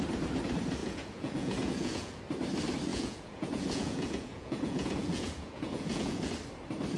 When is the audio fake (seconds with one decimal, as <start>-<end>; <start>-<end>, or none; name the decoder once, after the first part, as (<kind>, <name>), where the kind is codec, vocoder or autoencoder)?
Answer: 0.8-2.2 (vocoder, Vocos); 2.9-6.3